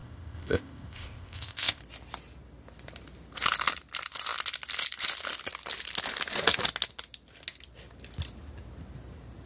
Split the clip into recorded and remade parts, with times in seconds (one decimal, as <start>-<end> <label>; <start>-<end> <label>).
0.0-1.8 remade; 1.8-9.5 recorded